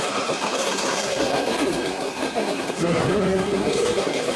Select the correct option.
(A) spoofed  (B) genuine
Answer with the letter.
A